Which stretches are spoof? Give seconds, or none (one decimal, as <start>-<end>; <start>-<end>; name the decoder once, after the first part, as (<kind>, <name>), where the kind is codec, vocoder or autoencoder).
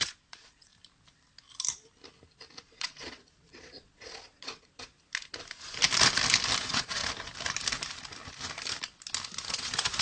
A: 0.0-0.7 (vocoder, Vocos); 2.6-4.9; 6.6-7.0; 9.5-10.0